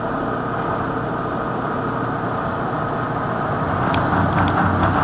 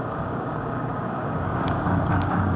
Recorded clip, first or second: first